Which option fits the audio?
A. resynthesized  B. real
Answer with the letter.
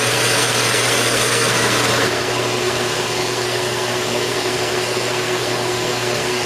A